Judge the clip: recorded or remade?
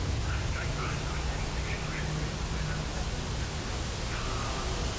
recorded